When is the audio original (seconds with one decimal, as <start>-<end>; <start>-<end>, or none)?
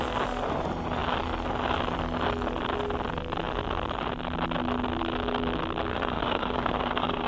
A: 0.0-5.9